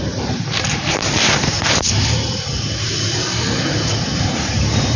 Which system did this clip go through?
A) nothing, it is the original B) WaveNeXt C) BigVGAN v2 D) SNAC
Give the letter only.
C